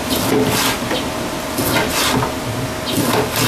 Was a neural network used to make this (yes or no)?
no